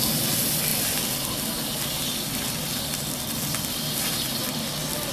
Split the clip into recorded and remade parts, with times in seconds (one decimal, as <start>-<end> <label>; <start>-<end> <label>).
0.0-5.1 recorded